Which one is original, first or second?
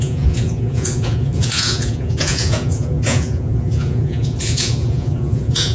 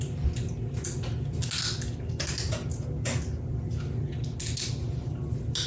second